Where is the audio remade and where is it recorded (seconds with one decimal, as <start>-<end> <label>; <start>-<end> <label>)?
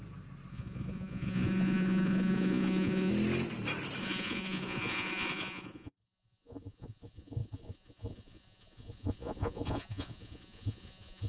0.0-0.5 recorded; 0.5-3.1 remade; 3.1-4.0 recorded; 4.0-11.3 remade